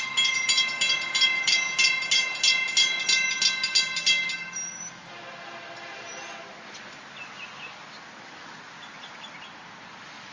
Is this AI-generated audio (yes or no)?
no